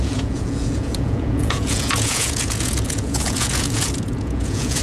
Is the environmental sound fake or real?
fake